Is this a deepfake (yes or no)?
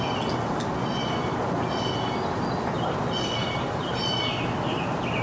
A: no